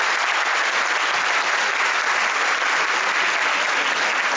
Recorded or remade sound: recorded